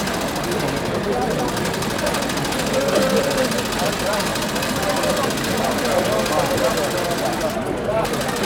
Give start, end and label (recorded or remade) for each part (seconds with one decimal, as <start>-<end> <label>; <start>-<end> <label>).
0.0-4.3 recorded; 4.3-6.5 remade; 6.5-8.4 recorded